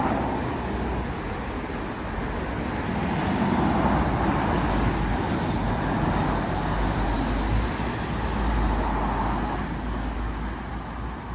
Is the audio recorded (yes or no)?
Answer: yes